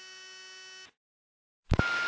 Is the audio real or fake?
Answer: real